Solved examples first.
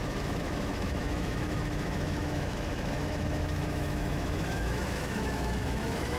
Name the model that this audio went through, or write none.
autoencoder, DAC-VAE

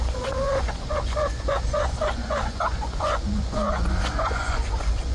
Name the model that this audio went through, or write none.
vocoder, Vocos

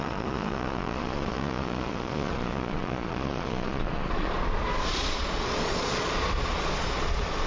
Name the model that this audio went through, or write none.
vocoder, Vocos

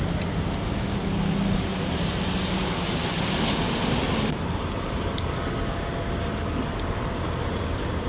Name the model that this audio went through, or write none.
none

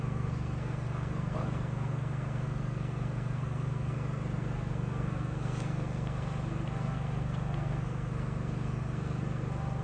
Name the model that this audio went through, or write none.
codec, SNAC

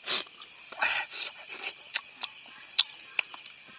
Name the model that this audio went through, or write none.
none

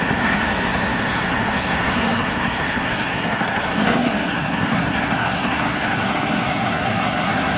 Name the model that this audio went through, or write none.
codec, SNAC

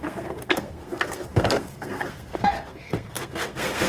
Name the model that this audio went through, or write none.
codec, SNAC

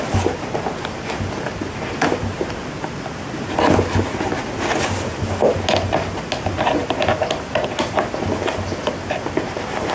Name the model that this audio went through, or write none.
none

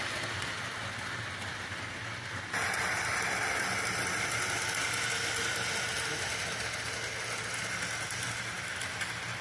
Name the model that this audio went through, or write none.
none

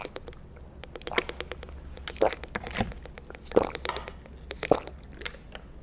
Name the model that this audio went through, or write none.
none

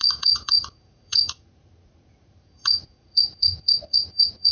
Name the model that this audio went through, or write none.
vocoder, Vocos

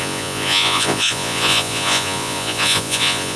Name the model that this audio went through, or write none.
vocoder, Vocos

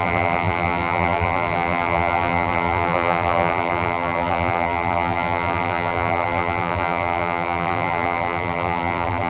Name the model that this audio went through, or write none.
vocoder, BigVGAN v2